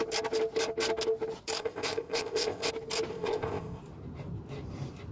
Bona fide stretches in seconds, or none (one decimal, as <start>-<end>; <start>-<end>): 0.0-1.6; 2.7-3.1; 3.8-5.1